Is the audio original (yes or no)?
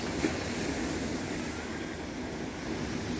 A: yes